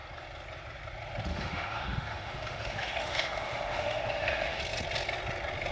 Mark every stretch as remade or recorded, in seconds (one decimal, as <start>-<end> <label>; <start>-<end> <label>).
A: 0.0-1.3 recorded; 1.3-4.6 remade; 4.6-5.7 recorded